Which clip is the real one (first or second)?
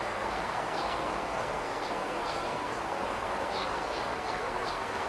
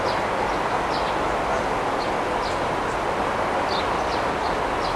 second